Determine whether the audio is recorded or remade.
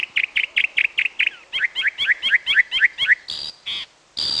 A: recorded